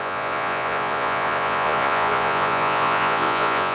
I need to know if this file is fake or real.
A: fake